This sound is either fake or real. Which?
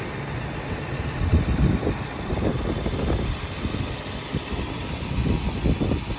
real